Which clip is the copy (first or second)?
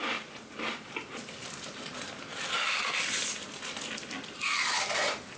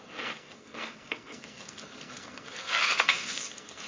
second